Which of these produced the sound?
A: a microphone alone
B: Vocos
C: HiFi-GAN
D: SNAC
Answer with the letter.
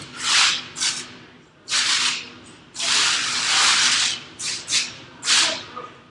A